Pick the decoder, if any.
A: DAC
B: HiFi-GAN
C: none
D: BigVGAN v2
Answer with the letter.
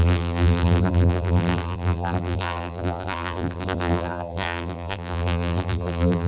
D